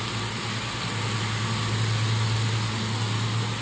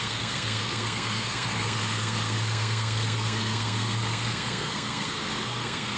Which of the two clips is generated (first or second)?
second